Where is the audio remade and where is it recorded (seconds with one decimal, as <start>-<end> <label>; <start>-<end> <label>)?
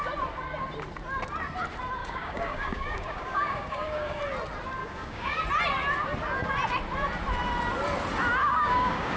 0.0-2.0 recorded; 2.0-4.2 remade; 4.2-4.8 recorded; 4.8-5.4 remade; 5.4-8.4 recorded; 8.4-9.2 remade